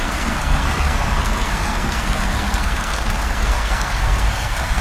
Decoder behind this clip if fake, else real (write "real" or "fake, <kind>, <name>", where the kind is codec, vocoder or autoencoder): fake, codec, SNAC